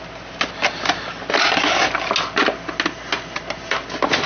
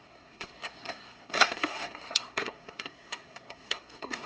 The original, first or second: first